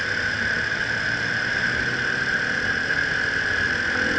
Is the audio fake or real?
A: real